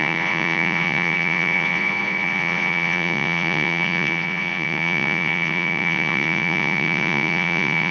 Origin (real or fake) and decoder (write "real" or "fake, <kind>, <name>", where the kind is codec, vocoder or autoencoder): fake, vocoder, Vocos